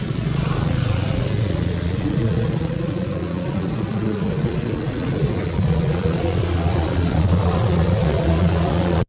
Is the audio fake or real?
fake